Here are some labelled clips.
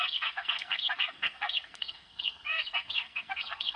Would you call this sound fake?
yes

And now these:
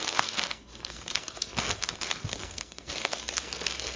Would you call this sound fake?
yes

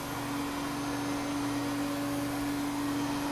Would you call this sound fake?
no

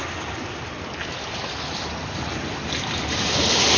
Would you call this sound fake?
no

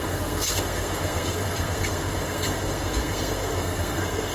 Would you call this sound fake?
yes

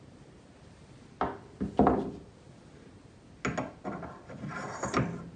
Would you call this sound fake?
no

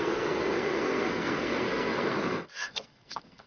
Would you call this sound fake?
yes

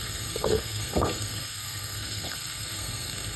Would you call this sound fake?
yes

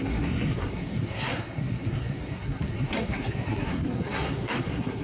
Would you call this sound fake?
yes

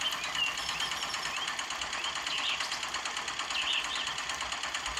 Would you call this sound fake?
no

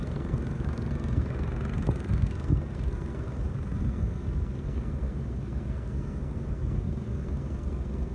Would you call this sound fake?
yes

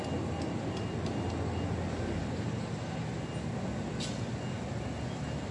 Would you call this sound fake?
no